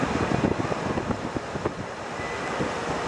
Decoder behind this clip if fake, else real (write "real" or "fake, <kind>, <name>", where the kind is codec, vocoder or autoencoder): real